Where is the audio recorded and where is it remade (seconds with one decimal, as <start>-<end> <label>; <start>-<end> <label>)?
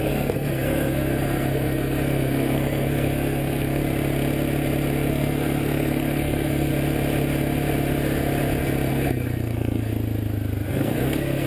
0.0-3.8 remade; 3.8-5.1 recorded; 5.1-6.7 remade; 6.7-8.9 recorded; 8.9-9.9 remade; 9.9-10.7 recorded; 10.7-11.5 remade